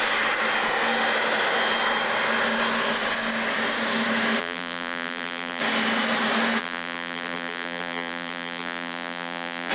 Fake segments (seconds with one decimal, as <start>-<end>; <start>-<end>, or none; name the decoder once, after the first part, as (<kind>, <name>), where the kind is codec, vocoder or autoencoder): 4.4-5.6 (vocoder, BigVGAN v2); 6.6-9.7